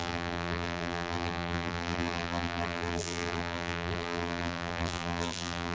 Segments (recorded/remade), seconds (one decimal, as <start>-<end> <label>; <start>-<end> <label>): 0.0-5.7 remade